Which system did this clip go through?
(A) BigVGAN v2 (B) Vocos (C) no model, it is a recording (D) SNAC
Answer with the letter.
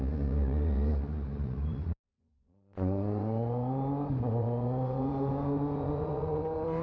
B